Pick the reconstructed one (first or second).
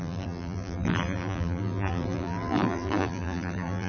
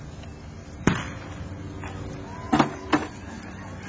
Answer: first